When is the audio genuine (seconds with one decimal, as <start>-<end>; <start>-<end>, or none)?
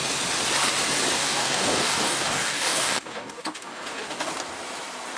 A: 0.0-1.2; 4.3-5.2